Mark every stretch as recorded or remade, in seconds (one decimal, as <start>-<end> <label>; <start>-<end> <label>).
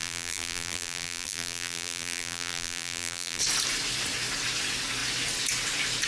0.0-3.4 remade; 3.4-6.1 recorded